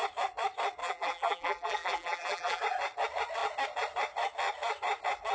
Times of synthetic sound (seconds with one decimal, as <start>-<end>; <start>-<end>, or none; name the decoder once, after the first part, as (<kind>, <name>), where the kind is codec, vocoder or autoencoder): 0.8-2.6 (vocoder, BigVGAN v2)